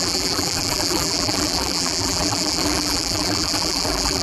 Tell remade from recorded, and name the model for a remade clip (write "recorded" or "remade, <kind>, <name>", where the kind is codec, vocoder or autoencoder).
remade, vocoder, BigVGAN v2